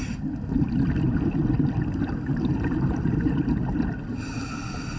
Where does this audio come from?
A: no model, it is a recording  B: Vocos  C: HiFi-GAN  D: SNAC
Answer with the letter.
A